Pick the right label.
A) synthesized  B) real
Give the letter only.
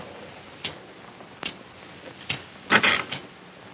B